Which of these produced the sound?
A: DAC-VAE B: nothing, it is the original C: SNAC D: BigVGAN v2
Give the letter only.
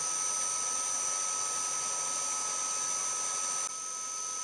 B